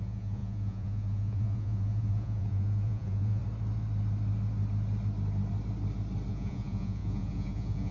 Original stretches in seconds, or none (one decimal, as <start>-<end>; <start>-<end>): 3.4-6.3